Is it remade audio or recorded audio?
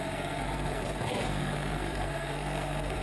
remade